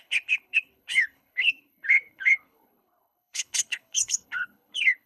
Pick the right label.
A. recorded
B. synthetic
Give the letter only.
B